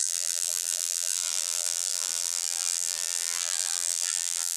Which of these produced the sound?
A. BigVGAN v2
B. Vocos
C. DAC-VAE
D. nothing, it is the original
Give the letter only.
A